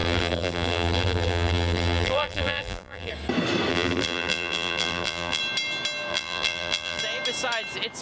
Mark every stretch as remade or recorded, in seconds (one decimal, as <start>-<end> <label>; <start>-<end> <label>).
0.0-3.1 remade; 3.1-3.7 recorded; 3.7-5.4 remade; 5.4-6.1 recorded; 6.1-7.0 remade; 7.0-8.0 recorded